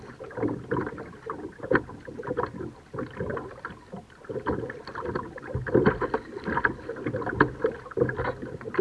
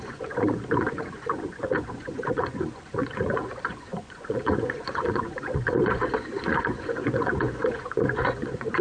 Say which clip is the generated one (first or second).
second